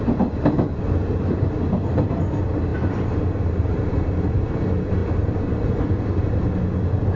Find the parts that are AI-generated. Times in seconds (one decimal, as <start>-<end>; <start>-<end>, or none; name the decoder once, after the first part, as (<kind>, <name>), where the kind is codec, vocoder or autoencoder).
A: 1.0-2.0 (vocoder, BigVGAN v2); 2.7-4.3; 5.0-6.4